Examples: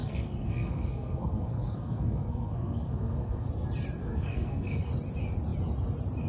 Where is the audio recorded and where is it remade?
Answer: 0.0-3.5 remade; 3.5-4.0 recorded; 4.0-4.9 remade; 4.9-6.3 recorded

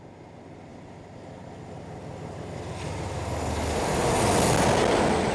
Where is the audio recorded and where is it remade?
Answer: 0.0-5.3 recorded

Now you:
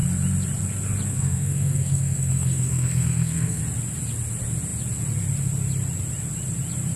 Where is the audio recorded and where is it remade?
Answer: 0.0-1.1 recorded; 1.1-3.6 remade; 3.6-7.0 recorded

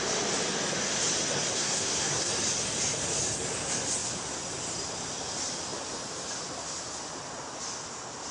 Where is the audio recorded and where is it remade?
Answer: 0.0-1.5 recorded; 1.5-2.3 remade; 2.3-8.3 recorded